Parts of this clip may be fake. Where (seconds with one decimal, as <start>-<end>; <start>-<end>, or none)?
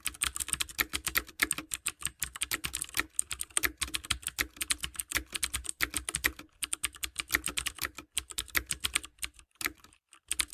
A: none